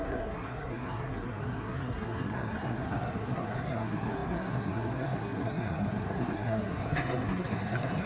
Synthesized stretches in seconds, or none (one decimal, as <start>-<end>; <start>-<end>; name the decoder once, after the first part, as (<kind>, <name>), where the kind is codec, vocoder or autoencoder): 0.0-8.1 (codec, SNAC)